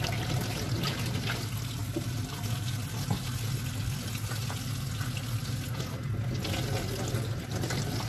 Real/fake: real